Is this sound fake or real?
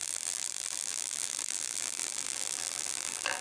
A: fake